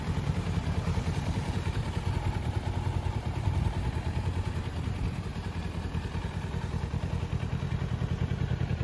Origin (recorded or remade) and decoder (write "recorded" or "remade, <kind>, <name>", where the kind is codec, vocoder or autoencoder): recorded